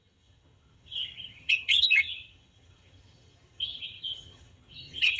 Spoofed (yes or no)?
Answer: yes